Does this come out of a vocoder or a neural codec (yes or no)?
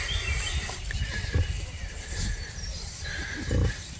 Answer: no